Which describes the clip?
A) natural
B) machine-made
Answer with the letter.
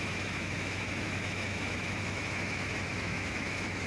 B